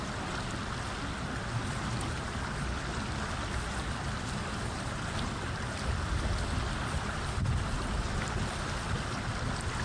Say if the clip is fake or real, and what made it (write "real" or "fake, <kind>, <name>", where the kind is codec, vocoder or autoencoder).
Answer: real